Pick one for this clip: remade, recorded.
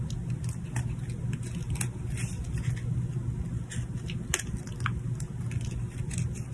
recorded